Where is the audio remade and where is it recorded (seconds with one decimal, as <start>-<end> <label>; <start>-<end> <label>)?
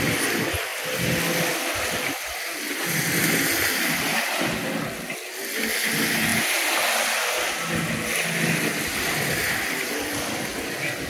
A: 0.0-11.1 recorded